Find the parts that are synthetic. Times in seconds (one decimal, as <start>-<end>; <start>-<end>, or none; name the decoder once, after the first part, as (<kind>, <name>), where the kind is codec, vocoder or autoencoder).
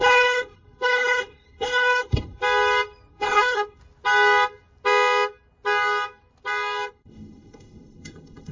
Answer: 0.0-2.4 (codec, HILCodec); 3.1-3.8; 6.9-8.5